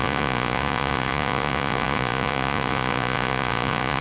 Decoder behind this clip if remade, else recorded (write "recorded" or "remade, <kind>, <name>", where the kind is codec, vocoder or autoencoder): remade, vocoder, Vocos